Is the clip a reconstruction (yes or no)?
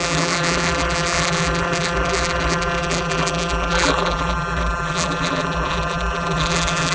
yes